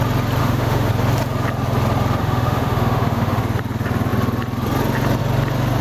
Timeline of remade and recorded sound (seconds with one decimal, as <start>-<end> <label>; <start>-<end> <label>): 0.0-0.4 recorded; 0.4-0.9 remade; 0.9-2.2 recorded; 2.2-3.4 remade; 3.4-5.8 recorded

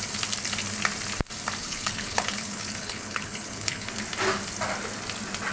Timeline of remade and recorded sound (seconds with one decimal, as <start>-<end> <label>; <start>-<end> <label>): 0.0-1.6 recorded; 1.6-3.9 remade; 3.9-5.5 recorded

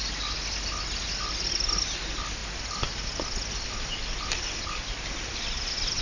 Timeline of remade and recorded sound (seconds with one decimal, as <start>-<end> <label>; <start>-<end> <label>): 0.0-6.0 recorded

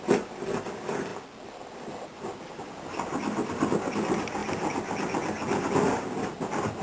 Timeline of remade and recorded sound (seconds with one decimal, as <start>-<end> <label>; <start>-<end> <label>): 0.0-6.8 recorded

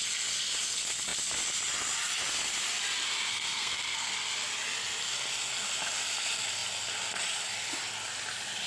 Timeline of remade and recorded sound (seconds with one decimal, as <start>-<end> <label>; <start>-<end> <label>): 0.0-3.3 recorded; 3.3-4.1 remade; 4.1-8.7 recorded